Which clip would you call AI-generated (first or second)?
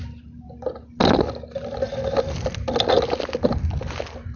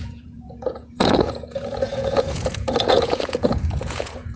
second